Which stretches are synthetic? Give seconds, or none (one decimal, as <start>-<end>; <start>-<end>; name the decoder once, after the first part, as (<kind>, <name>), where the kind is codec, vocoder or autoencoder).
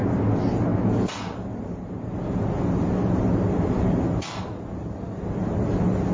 none